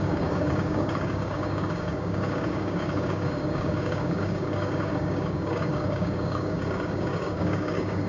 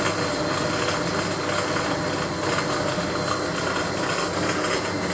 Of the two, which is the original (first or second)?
second